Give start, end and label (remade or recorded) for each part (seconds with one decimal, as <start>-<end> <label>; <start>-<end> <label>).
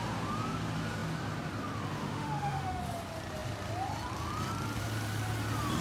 0.0-2.0 recorded; 2.0-2.8 remade; 2.8-5.8 recorded